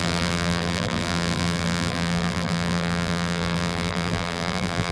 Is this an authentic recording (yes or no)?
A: no